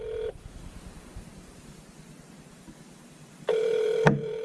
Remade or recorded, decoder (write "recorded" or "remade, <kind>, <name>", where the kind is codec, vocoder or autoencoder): remade, vocoder, BigVGAN v2